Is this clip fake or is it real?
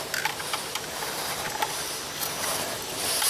real